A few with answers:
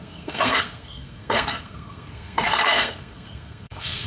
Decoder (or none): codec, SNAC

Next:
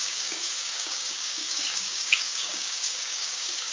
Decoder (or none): codec, DAC